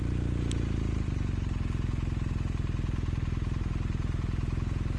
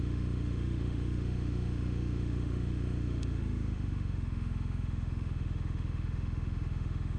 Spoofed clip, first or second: second